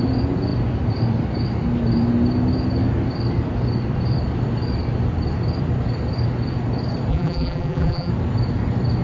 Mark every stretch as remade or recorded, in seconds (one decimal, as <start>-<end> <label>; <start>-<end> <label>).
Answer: 0.0-7.1 recorded; 7.1-8.1 remade; 8.1-9.0 recorded